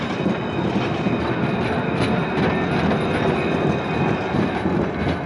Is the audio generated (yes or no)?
no